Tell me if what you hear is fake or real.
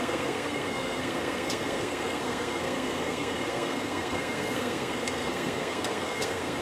fake